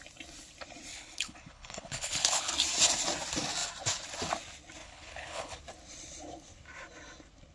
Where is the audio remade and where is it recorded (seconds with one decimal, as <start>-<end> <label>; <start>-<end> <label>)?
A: 0.0-0.9 recorded; 0.9-2.5 remade; 2.5-4.8 recorded; 4.8-5.6 remade; 5.6-7.5 recorded